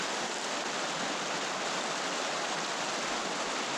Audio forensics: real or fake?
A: real